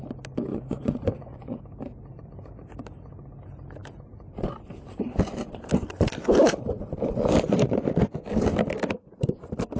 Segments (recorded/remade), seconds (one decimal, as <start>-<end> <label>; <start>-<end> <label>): 0.0-0.5 recorded; 0.5-1.6 remade; 1.6-9.8 recorded